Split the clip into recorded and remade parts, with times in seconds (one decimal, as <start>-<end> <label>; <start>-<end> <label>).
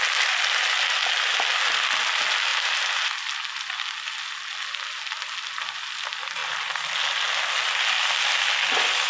0.0-9.1 recorded